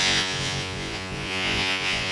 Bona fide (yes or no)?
no